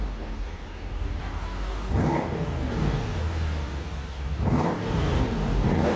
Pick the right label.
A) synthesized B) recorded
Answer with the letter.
A